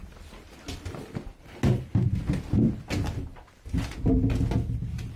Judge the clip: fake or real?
real